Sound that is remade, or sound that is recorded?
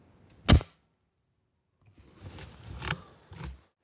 recorded